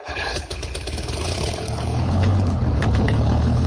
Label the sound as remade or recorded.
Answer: remade